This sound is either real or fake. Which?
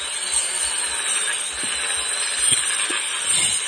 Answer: real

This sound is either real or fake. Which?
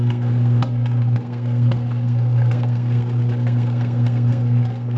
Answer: fake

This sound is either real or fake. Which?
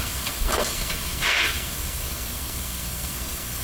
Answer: fake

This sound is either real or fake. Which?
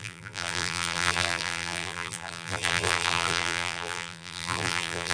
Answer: fake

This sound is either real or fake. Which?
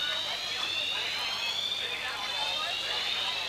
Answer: real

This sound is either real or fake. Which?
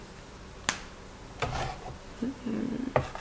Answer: real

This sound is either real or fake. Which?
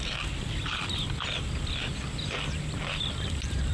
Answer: real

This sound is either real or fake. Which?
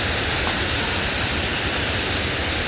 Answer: real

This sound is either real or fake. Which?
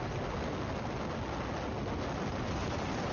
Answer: real